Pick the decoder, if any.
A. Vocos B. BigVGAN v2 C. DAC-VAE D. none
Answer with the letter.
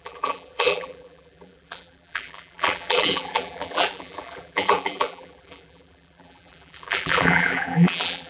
B